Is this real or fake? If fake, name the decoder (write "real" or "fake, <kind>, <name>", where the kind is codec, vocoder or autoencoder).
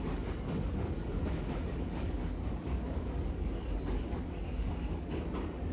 fake, codec, DAC